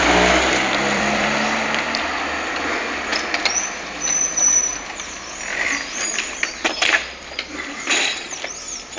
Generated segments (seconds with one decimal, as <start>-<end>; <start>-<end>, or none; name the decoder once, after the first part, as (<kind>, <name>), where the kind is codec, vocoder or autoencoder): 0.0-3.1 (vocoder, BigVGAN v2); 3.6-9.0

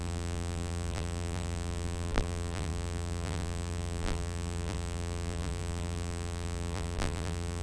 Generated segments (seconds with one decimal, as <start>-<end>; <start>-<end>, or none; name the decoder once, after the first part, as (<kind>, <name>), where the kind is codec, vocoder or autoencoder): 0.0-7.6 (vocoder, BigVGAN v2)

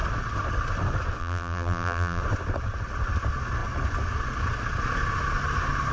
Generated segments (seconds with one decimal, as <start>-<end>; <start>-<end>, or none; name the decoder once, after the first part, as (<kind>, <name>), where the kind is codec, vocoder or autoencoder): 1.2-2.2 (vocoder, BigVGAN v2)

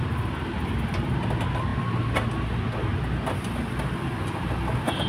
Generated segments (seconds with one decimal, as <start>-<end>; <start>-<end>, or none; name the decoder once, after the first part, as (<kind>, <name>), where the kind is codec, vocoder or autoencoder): none

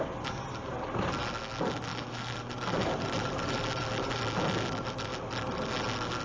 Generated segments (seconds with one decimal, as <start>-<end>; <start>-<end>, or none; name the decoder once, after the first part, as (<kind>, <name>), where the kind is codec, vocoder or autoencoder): 1.9-4.2 (vocoder, BigVGAN v2)

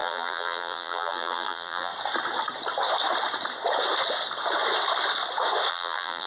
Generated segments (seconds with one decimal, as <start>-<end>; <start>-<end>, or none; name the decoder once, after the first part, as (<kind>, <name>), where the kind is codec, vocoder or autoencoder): 0.0-1.9 (vocoder, BigVGAN v2); 5.7-6.3